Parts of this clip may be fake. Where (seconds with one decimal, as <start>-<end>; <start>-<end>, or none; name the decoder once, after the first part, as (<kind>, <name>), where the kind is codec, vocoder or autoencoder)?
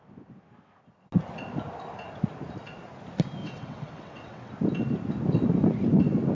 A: 3.4-4.5 (vocoder, WaveNeXt)